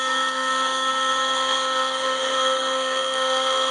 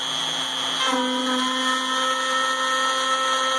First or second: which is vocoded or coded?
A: first